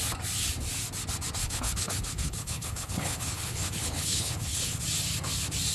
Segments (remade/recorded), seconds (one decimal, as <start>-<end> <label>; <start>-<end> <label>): 0.0-1.4 recorded; 1.4-4.8 remade; 4.8-5.7 recorded